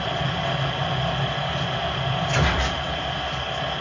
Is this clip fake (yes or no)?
no